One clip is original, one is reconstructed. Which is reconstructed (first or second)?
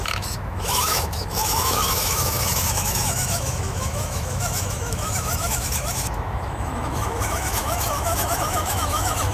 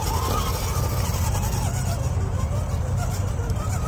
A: first